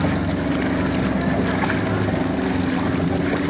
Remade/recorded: recorded